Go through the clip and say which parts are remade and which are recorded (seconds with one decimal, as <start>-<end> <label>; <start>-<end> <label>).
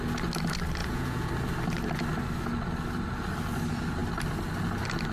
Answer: 0.0-0.8 recorded; 0.8-1.3 remade; 1.3-5.1 recorded